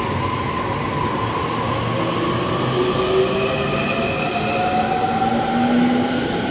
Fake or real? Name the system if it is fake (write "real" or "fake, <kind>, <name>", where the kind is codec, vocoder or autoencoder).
real